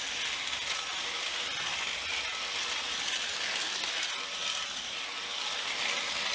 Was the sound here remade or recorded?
recorded